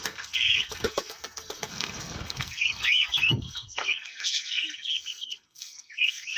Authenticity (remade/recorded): remade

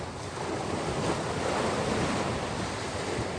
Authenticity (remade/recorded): recorded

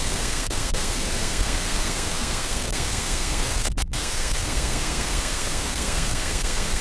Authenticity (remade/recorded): remade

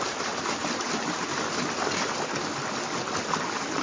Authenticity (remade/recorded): recorded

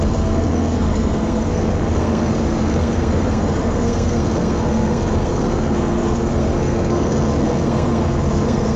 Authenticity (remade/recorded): remade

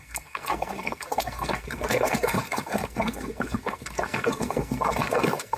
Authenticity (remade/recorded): remade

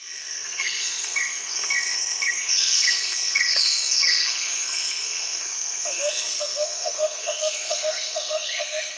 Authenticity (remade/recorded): remade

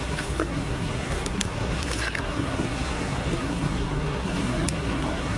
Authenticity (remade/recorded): remade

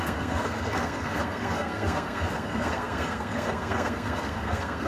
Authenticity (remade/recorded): remade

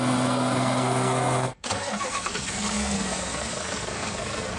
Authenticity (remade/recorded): remade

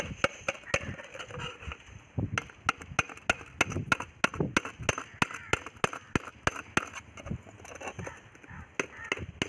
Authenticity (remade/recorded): recorded